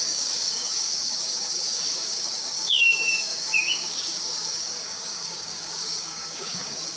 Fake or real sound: fake